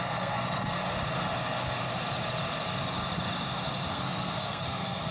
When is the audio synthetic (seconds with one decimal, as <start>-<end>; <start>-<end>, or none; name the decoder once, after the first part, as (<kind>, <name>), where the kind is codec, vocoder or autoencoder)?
0.0-0.8 (codec, SNAC); 3.9-5.1